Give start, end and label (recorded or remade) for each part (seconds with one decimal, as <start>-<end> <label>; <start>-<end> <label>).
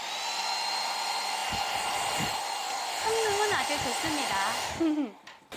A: 0.0-5.6 recorded